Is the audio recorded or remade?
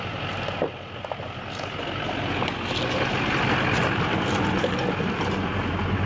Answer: recorded